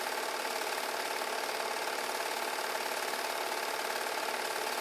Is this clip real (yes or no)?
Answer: yes